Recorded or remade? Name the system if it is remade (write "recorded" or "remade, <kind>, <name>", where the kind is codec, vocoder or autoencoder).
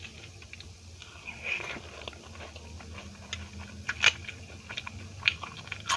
recorded